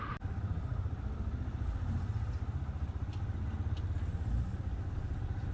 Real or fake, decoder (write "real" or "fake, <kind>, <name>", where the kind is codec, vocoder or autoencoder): real